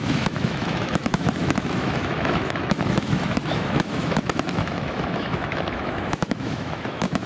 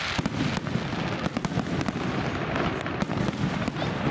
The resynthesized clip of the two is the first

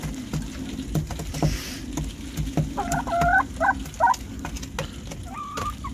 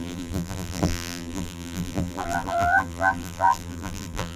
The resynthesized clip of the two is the second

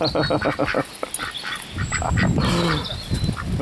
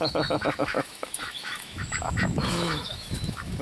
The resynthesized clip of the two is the second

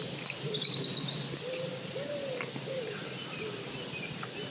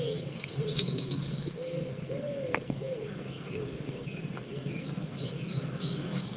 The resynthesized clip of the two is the second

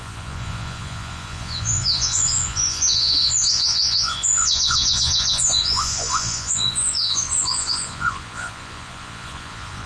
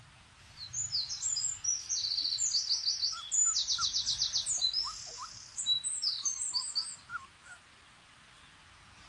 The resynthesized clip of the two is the first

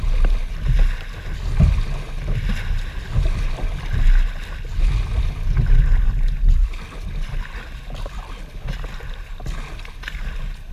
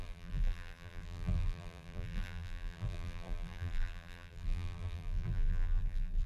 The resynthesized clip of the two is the second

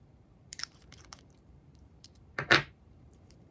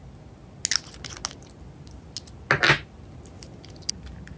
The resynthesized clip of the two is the first